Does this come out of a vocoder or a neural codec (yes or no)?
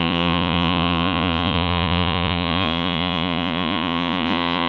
yes